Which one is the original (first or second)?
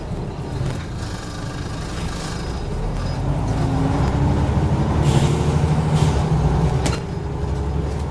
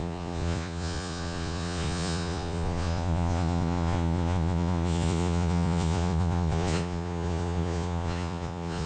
first